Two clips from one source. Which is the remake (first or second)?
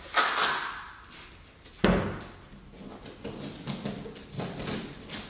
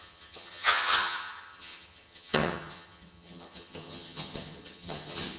second